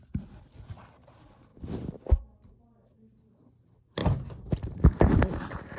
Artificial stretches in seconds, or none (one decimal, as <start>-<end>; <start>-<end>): none